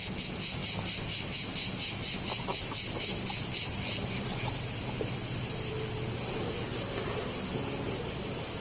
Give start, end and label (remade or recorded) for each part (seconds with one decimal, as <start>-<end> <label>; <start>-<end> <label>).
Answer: 0.0-8.6 recorded